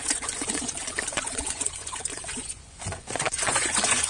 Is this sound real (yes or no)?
no